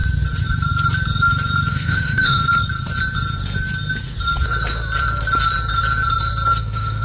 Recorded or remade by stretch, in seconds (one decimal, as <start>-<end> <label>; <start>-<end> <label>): 0.0-1.7 recorded; 1.7-2.4 remade; 2.4-6.6 recorded; 6.6-7.0 remade